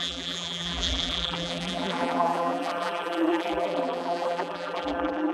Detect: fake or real fake